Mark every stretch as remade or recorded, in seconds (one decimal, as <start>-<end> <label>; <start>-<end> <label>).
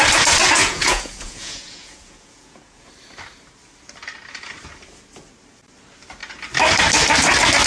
0.0-0.6 recorded; 0.6-2.9 remade; 2.9-7.7 recorded